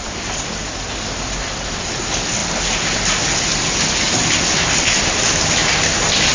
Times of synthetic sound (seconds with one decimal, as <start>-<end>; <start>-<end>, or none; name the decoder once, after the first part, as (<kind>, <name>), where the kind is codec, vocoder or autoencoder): none